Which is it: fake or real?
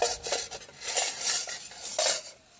real